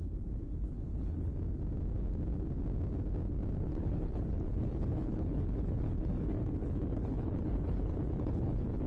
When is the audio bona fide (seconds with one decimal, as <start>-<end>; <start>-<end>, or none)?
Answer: 1.3-3.6